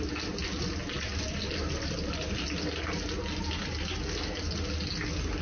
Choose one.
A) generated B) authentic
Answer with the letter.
B